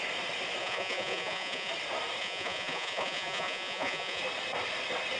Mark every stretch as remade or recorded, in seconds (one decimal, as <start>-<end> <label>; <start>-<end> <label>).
0.0-0.6 recorded; 0.6-1.7 remade; 1.7-2.2 recorded; 2.2-4.2 remade; 4.2-5.2 recorded